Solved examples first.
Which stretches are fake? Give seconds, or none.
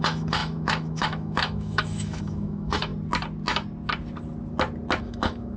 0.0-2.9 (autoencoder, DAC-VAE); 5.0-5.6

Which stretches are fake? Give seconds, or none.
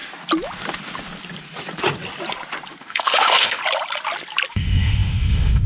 2.8-3.6 (autoencoder, DAC-VAE); 4.5-5.7